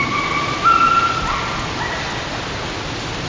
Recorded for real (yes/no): yes